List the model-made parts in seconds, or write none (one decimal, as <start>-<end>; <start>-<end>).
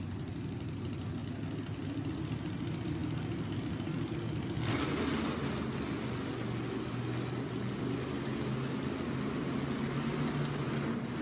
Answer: none